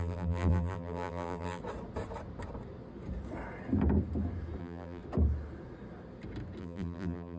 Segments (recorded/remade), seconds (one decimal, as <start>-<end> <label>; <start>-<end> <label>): 0.0-1.6 remade; 1.6-4.6 recorded; 4.6-5.0 remade; 5.0-6.6 recorded; 6.6-7.4 remade